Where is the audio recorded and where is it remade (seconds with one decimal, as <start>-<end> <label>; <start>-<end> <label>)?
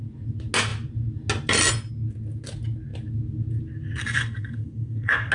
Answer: 0.0-4.0 recorded; 4.0-5.3 remade